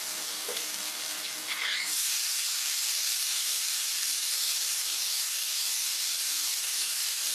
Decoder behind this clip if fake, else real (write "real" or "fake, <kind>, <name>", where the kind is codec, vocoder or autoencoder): fake, codec, DAC